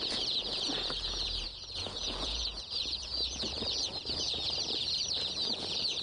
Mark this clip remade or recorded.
remade